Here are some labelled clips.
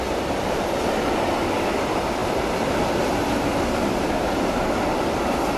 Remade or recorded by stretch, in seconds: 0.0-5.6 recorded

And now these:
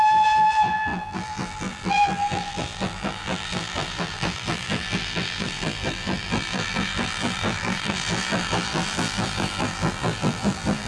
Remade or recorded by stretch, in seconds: 0.0-10.9 remade

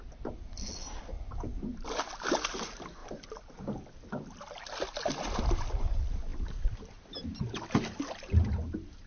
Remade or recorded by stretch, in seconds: 0.0-6.3 recorded; 6.3-6.9 remade; 6.9-9.1 recorded

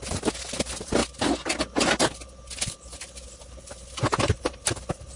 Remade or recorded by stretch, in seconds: 0.0-5.2 recorded

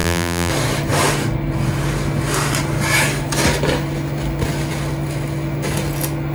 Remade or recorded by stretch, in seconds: 0.0-0.5 remade; 0.5-6.3 recorded

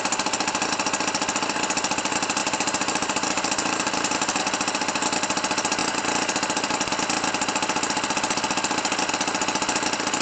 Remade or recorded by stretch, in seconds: 0.0-2.4 recorded; 2.4-4.4 remade; 4.4-10.2 recorded

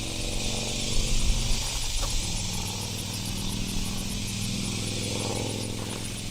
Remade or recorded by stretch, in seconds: 0.0-6.3 recorded